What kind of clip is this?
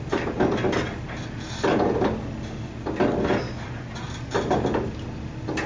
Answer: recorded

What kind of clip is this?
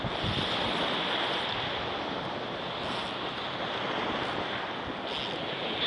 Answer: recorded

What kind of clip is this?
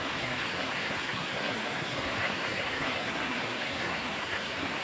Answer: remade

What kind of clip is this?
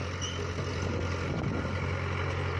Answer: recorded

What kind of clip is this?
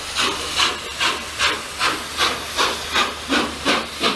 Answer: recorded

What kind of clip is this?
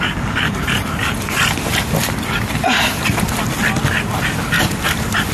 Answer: recorded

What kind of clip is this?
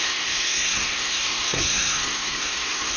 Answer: remade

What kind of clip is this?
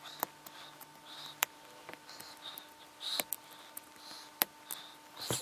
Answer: recorded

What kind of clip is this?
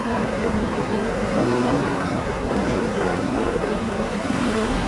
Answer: remade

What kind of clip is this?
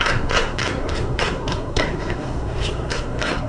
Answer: remade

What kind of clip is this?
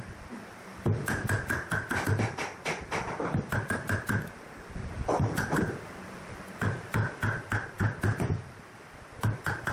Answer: recorded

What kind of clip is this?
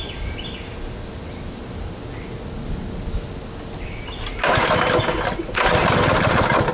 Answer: recorded